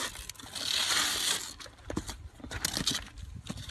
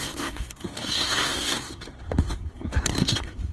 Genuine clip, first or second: first